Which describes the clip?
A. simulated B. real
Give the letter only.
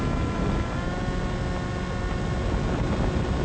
B